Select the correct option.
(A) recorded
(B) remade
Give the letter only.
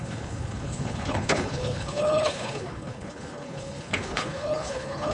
B